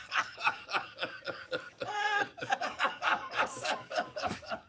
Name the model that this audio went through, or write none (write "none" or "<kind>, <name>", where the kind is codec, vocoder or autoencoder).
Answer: codec, DAC